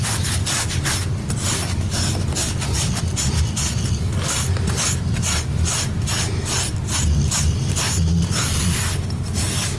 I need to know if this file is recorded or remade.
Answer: recorded